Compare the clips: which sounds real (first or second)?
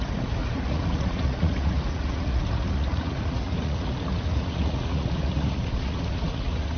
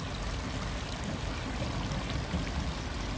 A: second